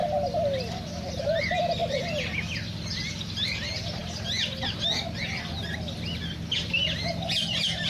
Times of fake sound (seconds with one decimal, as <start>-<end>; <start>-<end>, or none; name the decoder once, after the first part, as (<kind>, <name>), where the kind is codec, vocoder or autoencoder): none